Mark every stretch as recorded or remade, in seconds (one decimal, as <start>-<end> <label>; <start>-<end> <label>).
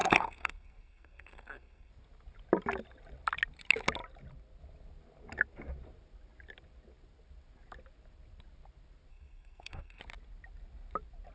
0.0-1.9 remade; 1.9-9.1 recorded; 9.1-10.0 remade; 10.0-11.3 recorded